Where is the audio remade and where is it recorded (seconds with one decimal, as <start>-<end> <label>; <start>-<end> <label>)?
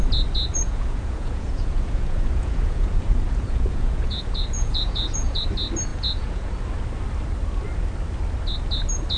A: 0.0-0.5 recorded; 0.5-5.4 remade; 5.4-5.9 recorded; 5.9-6.5 remade; 6.5-9.2 recorded